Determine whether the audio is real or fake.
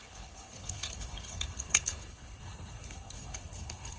fake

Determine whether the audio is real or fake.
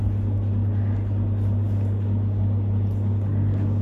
real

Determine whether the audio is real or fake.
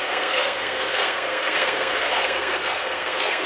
fake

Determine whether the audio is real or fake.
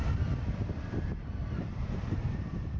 fake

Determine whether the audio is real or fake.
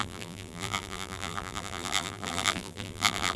fake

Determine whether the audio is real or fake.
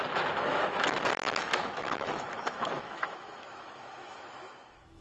fake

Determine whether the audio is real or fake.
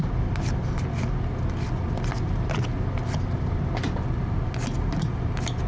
real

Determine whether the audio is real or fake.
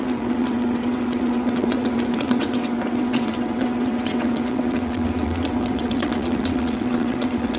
fake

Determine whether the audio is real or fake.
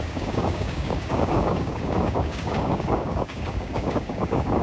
fake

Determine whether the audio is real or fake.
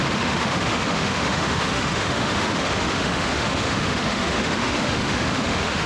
fake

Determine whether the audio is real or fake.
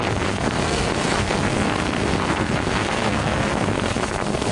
fake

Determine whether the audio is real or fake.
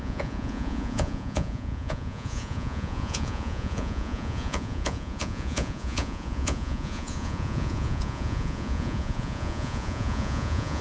fake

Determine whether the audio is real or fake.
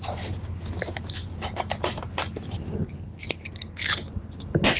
real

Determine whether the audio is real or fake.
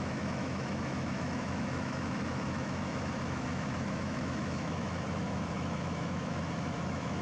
fake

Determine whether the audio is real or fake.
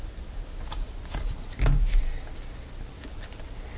real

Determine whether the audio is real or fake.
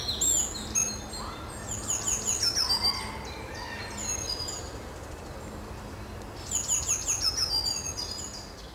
real